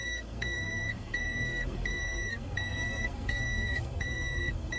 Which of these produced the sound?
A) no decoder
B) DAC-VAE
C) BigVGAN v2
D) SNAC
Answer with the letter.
D